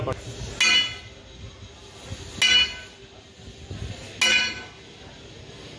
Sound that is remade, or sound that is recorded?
recorded